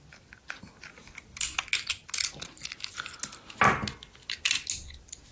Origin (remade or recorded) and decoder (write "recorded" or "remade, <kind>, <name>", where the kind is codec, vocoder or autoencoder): recorded